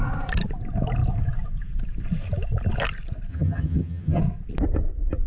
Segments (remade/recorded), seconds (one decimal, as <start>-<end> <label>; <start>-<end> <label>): 0.0-3.3 recorded; 3.3-4.2 remade; 4.2-5.3 recorded